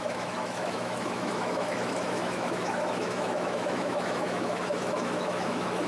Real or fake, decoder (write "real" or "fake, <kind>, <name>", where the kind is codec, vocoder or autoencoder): fake, autoencoder, DAC-VAE